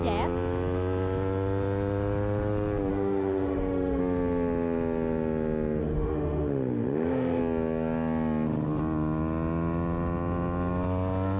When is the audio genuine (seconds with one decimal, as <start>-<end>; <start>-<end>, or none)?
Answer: 0.0-2.9; 4.0-5.8; 7.4-11.4